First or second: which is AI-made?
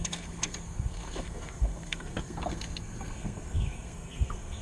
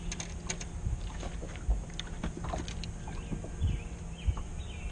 first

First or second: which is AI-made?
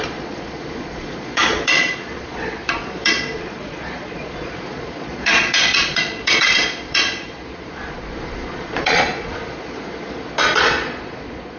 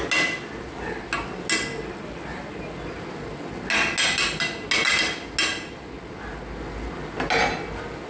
first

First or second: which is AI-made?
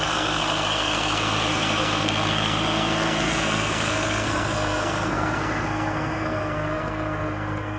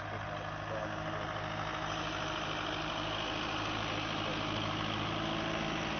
first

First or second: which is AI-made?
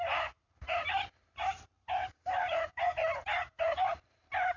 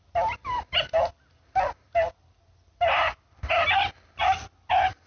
first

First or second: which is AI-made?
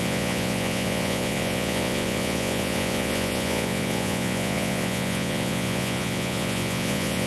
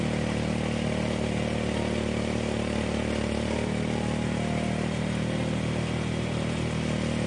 first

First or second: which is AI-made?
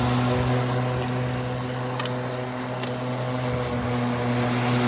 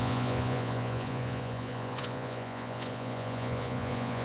second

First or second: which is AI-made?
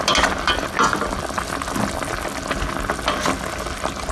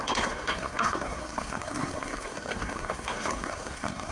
second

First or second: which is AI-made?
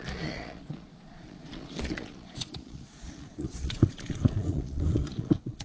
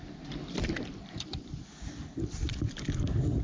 first